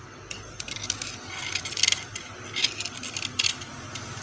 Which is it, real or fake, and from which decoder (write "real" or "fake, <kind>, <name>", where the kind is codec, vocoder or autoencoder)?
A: real